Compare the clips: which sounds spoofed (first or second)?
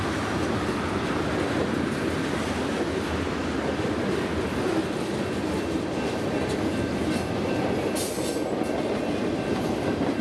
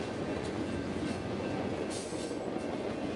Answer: second